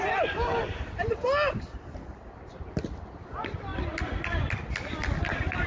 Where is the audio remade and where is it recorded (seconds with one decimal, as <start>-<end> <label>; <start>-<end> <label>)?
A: 0.0-5.7 recorded